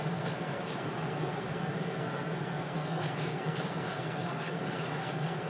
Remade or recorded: remade